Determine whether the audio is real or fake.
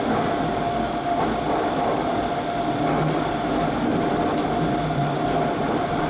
real